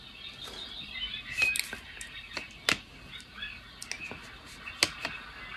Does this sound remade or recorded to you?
recorded